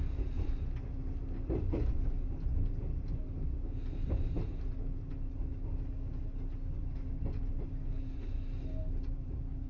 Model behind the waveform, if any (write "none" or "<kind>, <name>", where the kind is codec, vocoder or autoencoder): none